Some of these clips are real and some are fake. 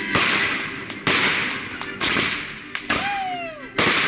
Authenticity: real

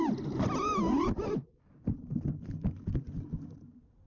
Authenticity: real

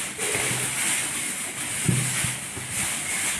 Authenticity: real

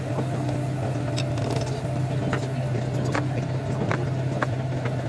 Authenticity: real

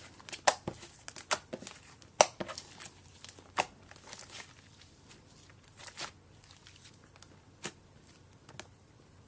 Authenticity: real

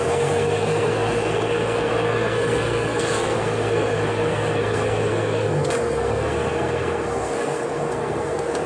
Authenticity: fake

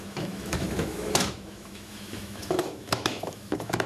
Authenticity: fake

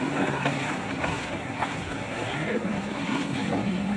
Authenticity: fake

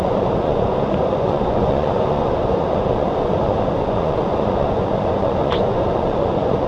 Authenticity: fake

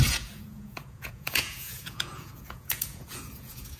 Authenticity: fake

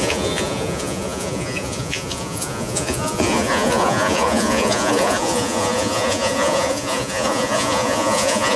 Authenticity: fake